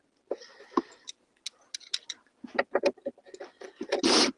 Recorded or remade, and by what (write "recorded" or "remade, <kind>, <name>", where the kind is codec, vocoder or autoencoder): recorded